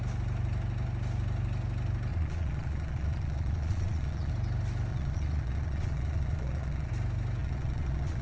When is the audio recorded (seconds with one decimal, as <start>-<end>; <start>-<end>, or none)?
0.0-2.1; 4.3-4.9; 6.9-7.4